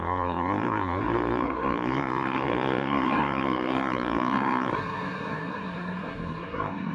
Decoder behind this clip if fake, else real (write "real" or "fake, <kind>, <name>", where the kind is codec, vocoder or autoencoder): fake, codec, SNAC